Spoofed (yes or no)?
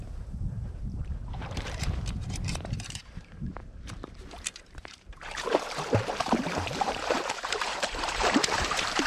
yes